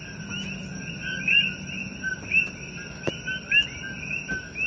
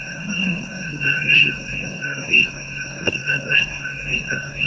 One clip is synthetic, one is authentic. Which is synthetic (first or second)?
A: second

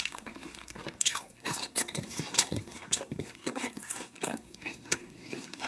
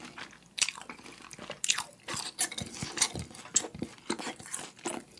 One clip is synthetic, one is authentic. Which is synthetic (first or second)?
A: first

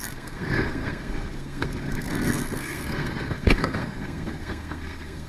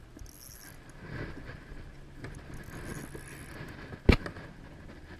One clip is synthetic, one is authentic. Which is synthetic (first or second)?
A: first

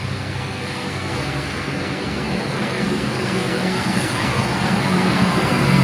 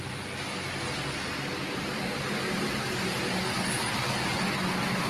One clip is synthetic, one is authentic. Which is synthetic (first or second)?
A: first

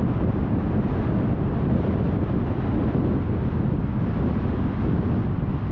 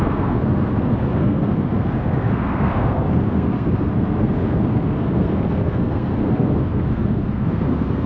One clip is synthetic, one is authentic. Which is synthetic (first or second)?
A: second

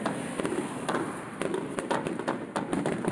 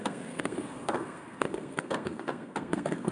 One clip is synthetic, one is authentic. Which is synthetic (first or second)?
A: second